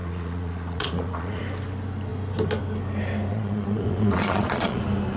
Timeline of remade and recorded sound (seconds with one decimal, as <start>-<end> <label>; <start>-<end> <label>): 0.0-1.4 remade; 1.4-3.3 recorded; 3.3-4.8 remade; 4.8-5.2 recorded